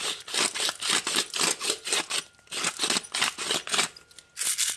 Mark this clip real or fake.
real